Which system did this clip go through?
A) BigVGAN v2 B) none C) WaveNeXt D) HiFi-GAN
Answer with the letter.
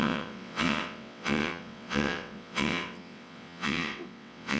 C